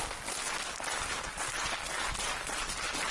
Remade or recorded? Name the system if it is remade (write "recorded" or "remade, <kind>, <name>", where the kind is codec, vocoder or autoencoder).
recorded